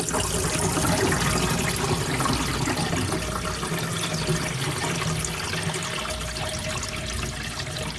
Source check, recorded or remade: recorded